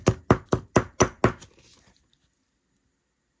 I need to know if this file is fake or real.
real